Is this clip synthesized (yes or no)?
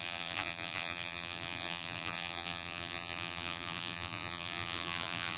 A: yes